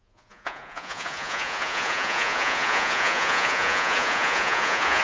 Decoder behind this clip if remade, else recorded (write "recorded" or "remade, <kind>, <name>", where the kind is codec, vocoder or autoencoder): remade, vocoder, Vocos